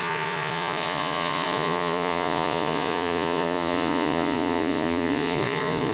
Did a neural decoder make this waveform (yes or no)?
yes